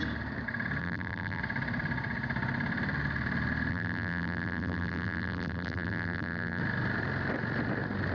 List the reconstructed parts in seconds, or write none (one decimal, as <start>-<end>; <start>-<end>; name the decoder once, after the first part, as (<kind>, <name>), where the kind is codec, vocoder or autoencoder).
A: 0.8-1.4 (vocoder, BigVGAN v2); 3.7-6.6